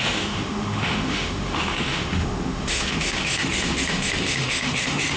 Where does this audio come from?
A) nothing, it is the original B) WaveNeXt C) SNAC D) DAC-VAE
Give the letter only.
D